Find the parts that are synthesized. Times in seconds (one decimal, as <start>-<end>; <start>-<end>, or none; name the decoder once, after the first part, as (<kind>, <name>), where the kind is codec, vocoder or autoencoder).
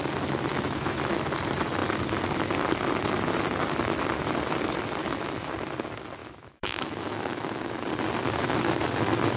0.5-1.1 (autoencoder, DAC-VAE); 5.0-5.5; 6.2-7.7